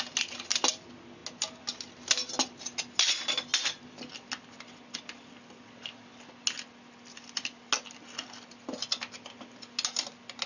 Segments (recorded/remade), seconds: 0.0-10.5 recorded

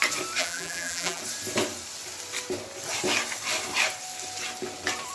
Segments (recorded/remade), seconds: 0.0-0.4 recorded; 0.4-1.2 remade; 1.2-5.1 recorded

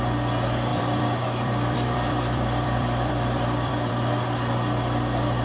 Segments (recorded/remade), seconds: 0.0-0.7 recorded; 0.7-3.9 remade; 3.9-5.4 recorded

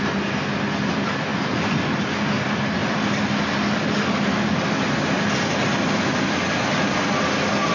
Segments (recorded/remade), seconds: 0.0-1.3 recorded; 1.3-1.8 remade; 1.8-7.7 recorded

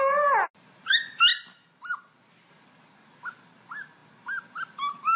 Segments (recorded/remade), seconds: 0.0-5.2 recorded